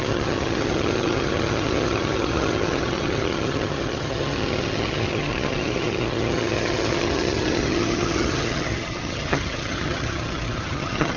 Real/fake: fake